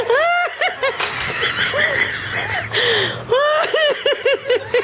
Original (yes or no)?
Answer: yes